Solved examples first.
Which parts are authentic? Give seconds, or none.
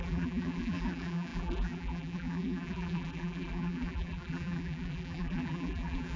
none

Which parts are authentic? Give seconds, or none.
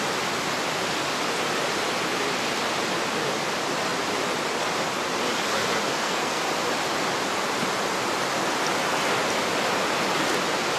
0.0-5.9; 6.4-10.8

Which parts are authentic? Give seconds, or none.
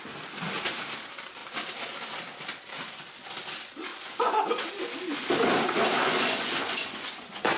0.0-3.9; 4.5-6.0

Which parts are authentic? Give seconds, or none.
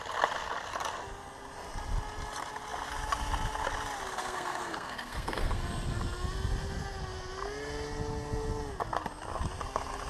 0.0-4.2; 5.6-10.1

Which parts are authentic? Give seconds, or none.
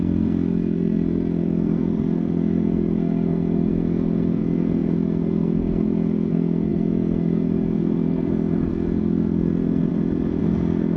9.9-10.4